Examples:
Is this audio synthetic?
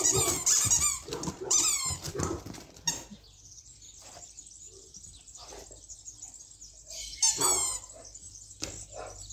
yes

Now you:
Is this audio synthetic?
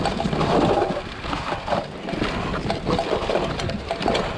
no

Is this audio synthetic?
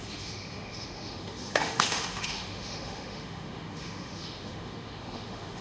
yes